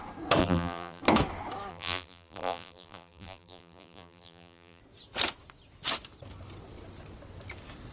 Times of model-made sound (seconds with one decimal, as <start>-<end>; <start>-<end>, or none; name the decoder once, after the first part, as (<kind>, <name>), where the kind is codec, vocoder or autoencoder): 0.4-1.0 (vocoder, BigVGAN v2); 1.7-4.8